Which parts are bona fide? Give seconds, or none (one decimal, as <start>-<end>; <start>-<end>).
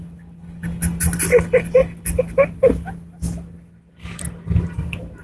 0.0-5.2